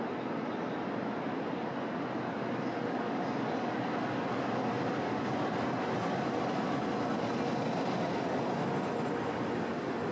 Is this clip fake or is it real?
real